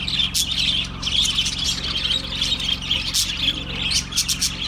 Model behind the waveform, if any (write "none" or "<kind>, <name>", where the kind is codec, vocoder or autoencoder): none